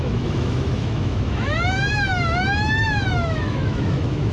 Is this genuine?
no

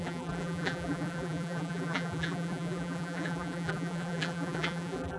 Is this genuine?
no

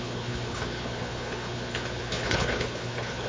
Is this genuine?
no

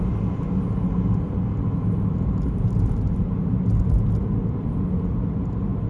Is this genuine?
yes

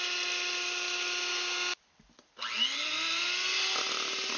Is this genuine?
yes